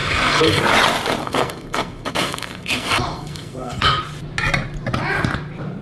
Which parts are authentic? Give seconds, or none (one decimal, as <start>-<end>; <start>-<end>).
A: 0.6-1.2; 4.0-5.8